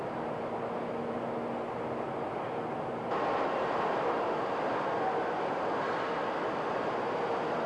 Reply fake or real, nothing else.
real